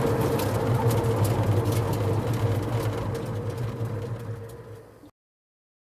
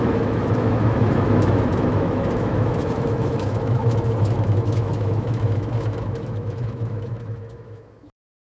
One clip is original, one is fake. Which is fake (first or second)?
second